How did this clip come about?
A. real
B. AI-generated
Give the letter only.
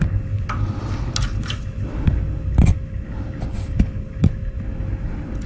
A